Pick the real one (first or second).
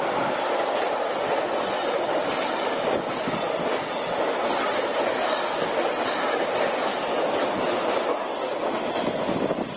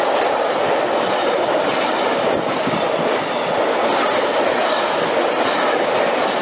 first